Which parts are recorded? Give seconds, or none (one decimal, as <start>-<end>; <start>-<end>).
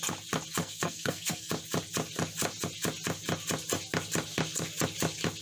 0.0-0.6; 1.5-5.4